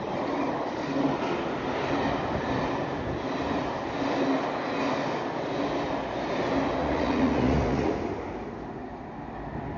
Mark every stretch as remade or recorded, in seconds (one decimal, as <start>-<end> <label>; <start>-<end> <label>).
0.0-6.8 recorded; 6.8-7.9 remade; 7.9-9.8 recorded